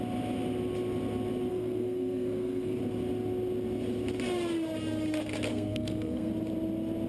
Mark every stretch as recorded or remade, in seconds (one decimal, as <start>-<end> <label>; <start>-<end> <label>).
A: 0.0-1.5 recorded; 1.5-2.8 remade; 2.8-5.5 recorded; 5.5-6.3 remade; 6.3-7.1 recorded